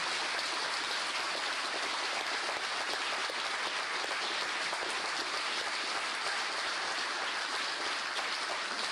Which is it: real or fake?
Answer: real